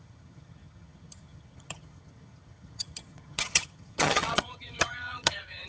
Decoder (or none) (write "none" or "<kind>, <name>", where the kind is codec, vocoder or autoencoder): vocoder, HiFi-GAN